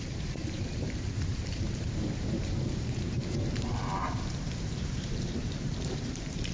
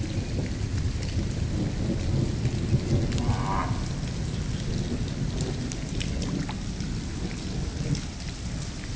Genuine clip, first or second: second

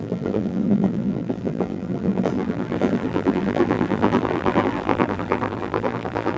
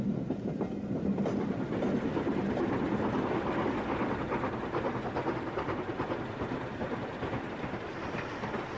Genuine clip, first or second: second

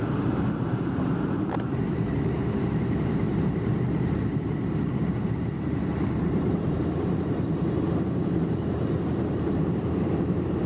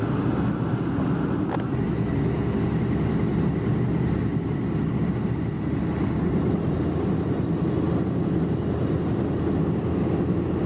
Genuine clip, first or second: second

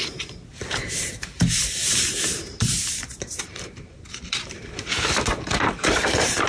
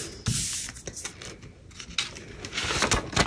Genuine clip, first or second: second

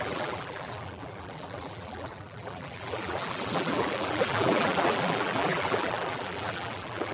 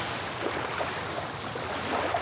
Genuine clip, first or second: second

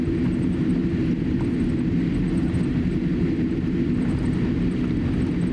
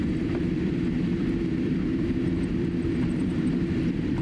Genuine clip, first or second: first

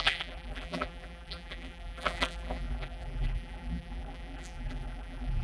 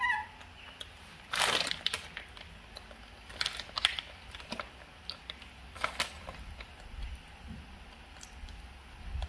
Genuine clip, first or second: second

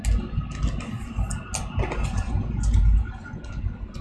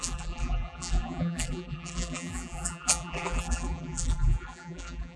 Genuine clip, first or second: first